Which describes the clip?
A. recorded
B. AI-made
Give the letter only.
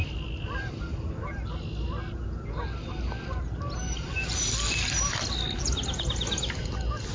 A